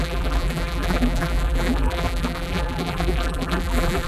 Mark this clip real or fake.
fake